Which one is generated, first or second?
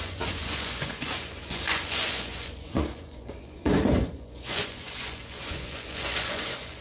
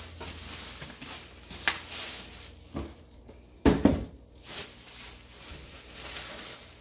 first